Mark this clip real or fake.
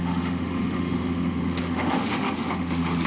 fake